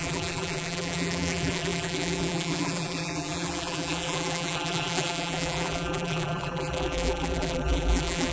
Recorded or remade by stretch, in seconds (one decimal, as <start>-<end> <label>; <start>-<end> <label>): 0.0-8.3 remade